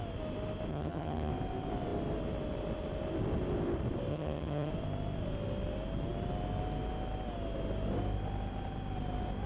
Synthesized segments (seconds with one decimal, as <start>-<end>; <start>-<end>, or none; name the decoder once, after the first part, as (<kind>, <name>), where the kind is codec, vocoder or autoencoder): 0.7-1.3 (vocoder, HiFi-GAN); 4.1-4.7